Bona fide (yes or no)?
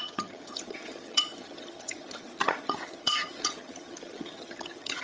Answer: no